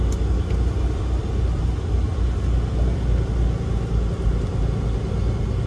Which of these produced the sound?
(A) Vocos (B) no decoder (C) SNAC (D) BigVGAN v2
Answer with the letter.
B